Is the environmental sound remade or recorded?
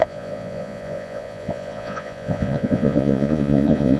remade